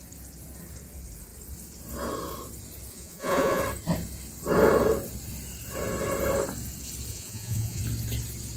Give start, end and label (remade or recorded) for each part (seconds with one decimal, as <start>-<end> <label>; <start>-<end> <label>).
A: 0.0-2.9 recorded; 2.9-3.6 remade; 3.6-7.1 recorded; 7.1-7.8 remade; 7.8-8.6 recorded